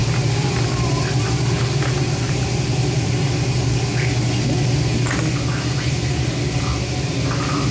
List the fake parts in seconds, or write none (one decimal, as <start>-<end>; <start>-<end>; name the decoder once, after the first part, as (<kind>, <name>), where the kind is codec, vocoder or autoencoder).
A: 0.0-3.6 (vocoder, BigVGAN v2)